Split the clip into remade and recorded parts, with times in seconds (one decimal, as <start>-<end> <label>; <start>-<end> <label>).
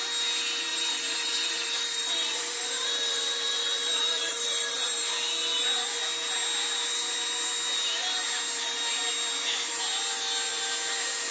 0.0-0.7 recorded; 0.7-5.1 remade; 5.1-11.3 recorded